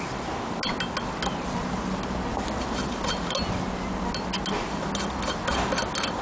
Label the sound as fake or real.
real